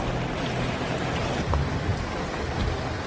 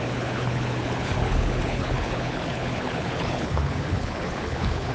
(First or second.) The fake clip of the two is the second